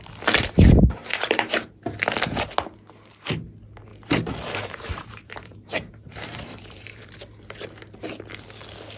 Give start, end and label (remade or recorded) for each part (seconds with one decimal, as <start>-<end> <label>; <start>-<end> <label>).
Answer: 0.0-1.0 recorded; 1.0-1.5 remade; 1.5-3.9 recorded; 3.9-7.1 remade; 7.1-9.0 recorded